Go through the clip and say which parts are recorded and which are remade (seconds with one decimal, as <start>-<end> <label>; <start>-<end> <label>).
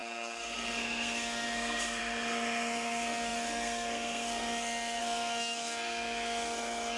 0.0-7.0 remade